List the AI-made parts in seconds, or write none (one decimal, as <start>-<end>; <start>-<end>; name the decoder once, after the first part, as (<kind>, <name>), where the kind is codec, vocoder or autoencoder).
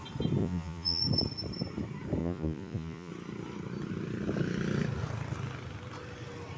0.4-1.0 (vocoder, Vocos); 2.2-3.1